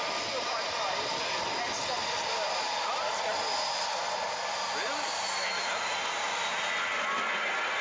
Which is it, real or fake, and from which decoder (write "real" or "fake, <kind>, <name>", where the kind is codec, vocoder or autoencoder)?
real